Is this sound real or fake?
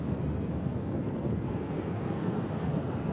fake